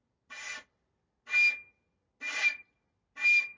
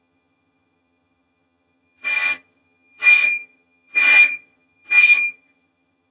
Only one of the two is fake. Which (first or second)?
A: second